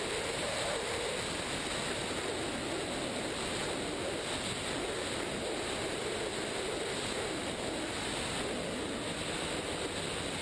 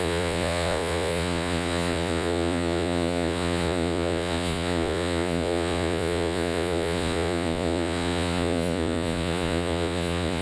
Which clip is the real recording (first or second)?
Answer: first